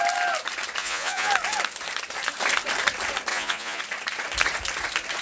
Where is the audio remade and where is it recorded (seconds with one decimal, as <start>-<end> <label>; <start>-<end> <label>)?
0.0-0.8 recorded; 0.8-1.3 remade; 1.3-3.3 recorded; 3.3-3.8 remade; 3.8-5.2 recorded